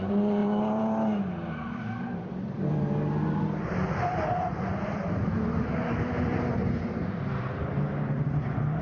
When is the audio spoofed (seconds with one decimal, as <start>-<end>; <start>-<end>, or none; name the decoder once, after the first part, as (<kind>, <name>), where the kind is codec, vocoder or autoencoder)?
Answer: 0.4-2.8 (vocoder, BigVGAN v2)